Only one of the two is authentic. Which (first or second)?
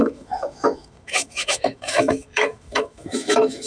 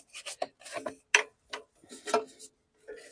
second